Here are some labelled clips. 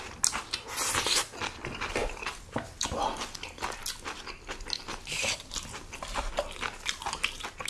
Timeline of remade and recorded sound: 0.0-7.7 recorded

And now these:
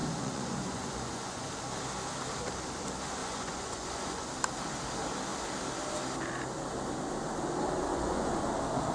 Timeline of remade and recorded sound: 0.0-1.5 remade; 1.5-3.2 recorded; 3.2-4.3 remade; 4.3-7.9 recorded; 7.9-8.4 remade; 8.4-8.9 recorded

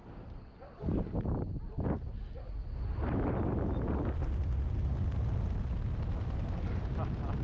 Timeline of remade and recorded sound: 0.0-7.4 recorded

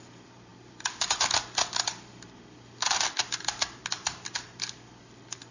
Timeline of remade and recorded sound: 0.0-5.5 recorded

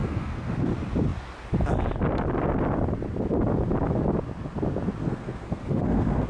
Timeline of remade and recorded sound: 0.0-0.7 remade; 0.7-5.0 recorded; 5.0-6.3 remade

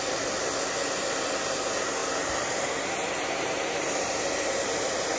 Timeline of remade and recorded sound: 0.0-2.0 recorded; 2.0-5.2 remade